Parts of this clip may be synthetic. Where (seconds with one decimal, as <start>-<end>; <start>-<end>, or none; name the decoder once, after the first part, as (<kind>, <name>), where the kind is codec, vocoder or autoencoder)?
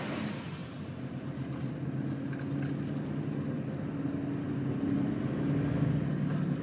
none